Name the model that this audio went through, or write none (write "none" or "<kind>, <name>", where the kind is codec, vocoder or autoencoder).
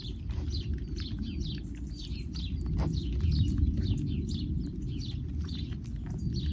none